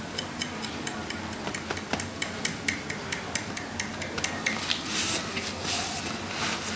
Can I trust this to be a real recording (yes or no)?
yes